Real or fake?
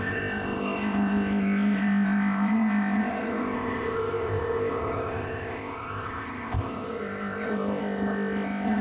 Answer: fake